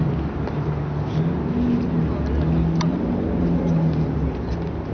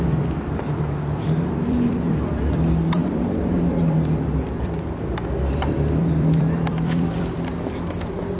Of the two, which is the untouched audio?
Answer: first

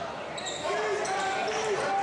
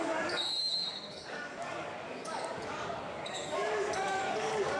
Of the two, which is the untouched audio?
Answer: first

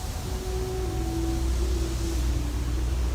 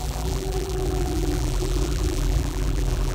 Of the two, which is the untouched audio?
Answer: first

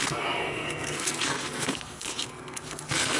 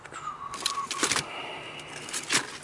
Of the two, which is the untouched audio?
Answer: second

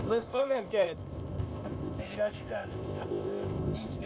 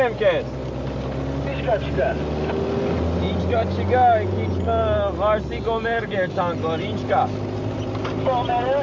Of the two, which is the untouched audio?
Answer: second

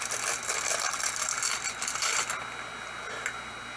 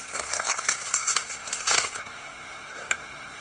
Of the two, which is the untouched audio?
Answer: first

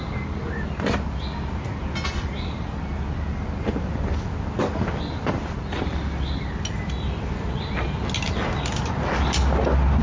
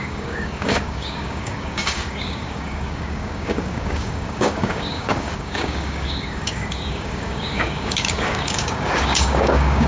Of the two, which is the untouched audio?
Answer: first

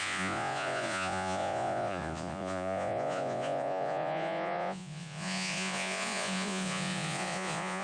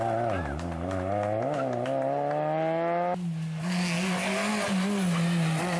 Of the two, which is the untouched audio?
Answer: second